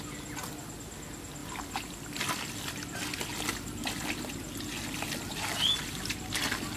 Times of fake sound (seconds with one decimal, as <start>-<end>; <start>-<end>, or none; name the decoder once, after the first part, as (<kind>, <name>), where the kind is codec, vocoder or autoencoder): none